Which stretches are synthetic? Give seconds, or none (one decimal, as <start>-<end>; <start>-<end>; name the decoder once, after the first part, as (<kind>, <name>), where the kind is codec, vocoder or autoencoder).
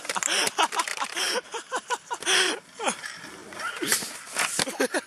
0.9-2.7 (vocoder, BigVGAN v2)